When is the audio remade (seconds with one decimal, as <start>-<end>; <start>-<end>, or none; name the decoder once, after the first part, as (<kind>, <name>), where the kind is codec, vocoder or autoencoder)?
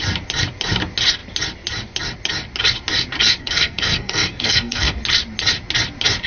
3.4-5.0 (codec, SNAC)